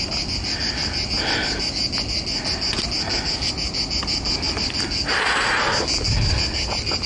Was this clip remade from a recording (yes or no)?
no